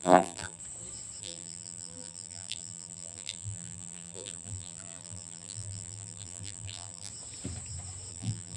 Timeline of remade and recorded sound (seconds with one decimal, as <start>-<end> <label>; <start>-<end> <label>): 0.0-0.6 remade; 0.6-1.2 recorded; 1.2-7.1 remade; 7.1-8.1 recorded; 8.1-8.6 remade